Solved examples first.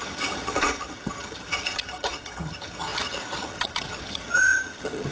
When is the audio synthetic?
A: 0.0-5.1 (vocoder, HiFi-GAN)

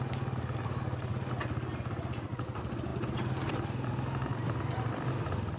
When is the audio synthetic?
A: none

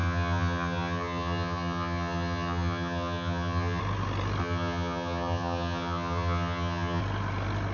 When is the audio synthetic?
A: 0.0-3.8 (vocoder, HiFi-GAN); 4.4-7.0

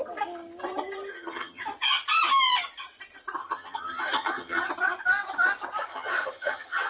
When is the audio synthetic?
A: 1.1-1.6 (vocoder, HiFi-GAN); 3.4-4.7; 5.9-6.9